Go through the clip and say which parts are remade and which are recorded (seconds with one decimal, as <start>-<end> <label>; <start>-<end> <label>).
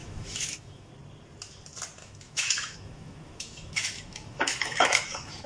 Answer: 0.0-0.9 remade; 0.9-2.0 recorded; 2.0-5.5 remade